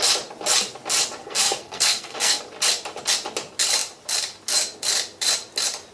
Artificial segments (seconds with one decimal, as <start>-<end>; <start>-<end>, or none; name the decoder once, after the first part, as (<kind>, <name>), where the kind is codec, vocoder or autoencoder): 1.2-2.4 (codec, SNAC)